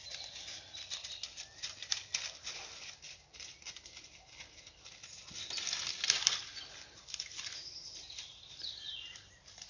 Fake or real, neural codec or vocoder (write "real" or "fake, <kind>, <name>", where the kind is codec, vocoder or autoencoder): real